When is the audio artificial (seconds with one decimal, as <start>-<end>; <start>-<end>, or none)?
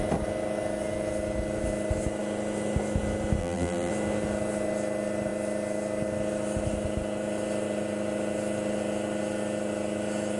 3.4-3.9